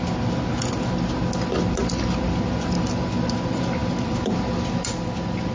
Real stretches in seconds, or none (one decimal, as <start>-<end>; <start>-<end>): 0.0-3.8; 4.3-5.5